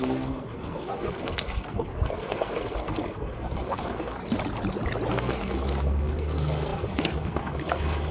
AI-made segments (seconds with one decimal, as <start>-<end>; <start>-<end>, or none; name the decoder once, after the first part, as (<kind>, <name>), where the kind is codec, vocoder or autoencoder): 0.0-4.2 (codec, SNAC); 5.1-8.1